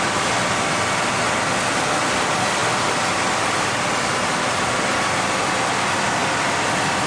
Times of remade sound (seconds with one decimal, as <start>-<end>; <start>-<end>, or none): none